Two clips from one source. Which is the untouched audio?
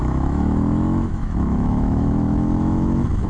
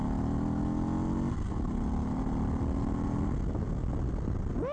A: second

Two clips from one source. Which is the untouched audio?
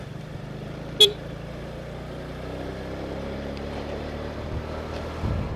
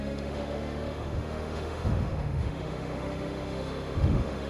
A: first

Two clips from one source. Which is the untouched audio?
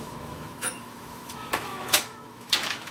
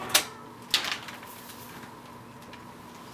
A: second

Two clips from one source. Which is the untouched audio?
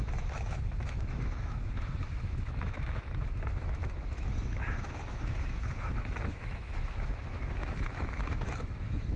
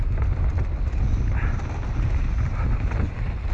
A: second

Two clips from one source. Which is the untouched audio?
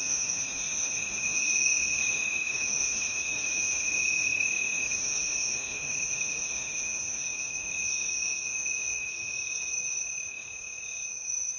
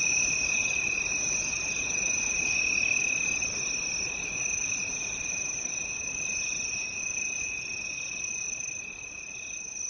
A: second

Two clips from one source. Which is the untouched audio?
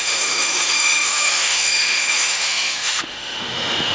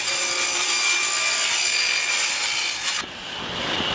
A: second